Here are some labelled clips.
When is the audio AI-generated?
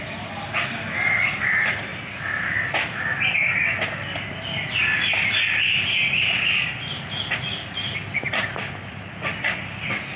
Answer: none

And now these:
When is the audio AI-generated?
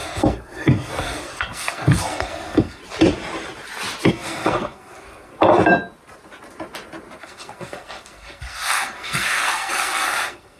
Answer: 0.0-2.8; 4.1-5.3; 7.2-10.6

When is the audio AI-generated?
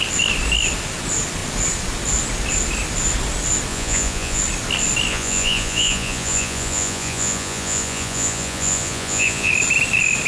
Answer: 3.7-4.4; 5.1-9.5